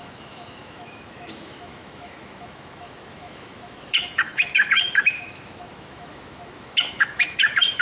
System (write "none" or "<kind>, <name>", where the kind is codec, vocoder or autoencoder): autoencoder, DAC-VAE